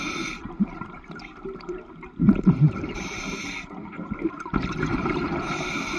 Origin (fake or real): fake